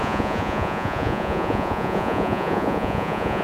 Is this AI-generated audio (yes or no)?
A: yes